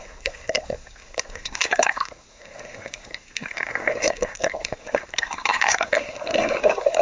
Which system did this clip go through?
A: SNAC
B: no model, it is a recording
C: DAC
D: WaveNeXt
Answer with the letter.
A